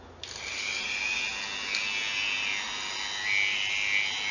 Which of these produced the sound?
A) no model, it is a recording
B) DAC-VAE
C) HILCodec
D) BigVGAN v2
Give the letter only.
A